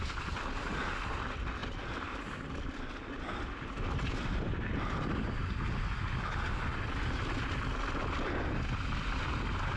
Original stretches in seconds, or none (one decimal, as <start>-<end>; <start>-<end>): 0.0-9.8